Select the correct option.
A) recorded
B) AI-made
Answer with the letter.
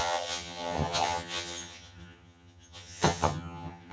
B